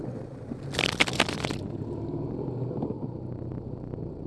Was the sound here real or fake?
real